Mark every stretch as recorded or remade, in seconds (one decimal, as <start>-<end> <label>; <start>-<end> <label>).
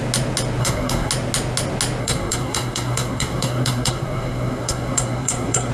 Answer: 0.0-0.6 recorded; 0.6-1.1 remade; 1.1-2.0 recorded; 2.0-5.7 remade